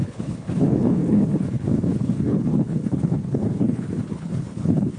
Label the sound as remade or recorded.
remade